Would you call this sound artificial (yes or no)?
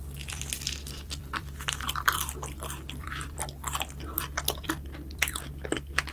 yes